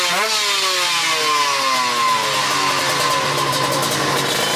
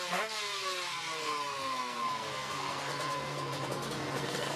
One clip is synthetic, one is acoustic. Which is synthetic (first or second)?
second